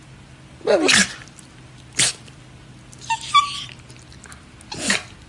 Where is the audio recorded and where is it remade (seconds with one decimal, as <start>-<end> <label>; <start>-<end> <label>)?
0.0-5.3 recorded